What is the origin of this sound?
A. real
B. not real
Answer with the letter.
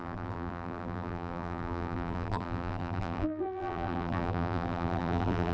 B